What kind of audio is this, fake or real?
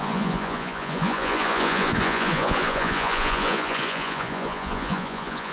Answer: fake